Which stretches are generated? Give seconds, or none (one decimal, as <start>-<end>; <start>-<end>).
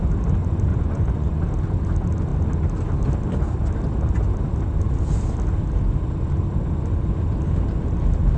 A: 0.7-1.4